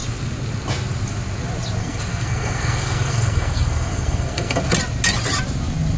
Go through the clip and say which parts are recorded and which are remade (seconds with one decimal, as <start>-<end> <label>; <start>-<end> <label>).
0.0-1.8 recorded; 1.8-4.6 remade; 4.6-6.0 recorded